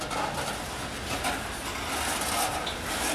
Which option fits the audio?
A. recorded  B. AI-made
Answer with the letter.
A